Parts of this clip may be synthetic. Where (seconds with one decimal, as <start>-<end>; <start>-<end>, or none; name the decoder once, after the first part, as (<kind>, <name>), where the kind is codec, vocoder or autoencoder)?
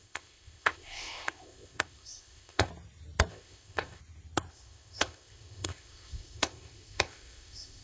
0.0-2.7 (codec, ZipCodec); 3.3-4.0; 4.5-7.8